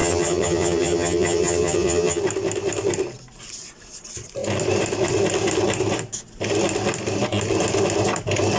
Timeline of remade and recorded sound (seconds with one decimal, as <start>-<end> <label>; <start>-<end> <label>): 0.0-2.2 remade; 2.2-8.6 recorded